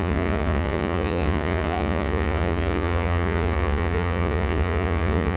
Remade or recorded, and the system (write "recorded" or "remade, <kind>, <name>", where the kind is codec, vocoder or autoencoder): remade, vocoder, Vocos